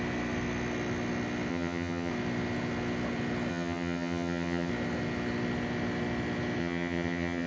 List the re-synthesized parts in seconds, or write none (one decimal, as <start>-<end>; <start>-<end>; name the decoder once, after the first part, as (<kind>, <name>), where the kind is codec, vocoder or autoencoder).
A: 1.5-2.1 (vocoder, HiFi-GAN); 3.5-4.7; 6.6-7.5